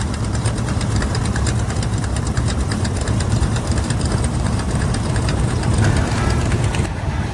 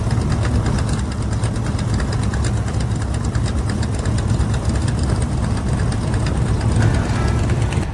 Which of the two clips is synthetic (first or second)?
first